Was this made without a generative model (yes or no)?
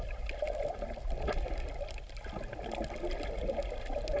yes